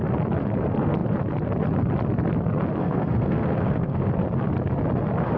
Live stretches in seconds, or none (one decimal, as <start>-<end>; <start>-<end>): 0.0-2.8; 4.1-5.4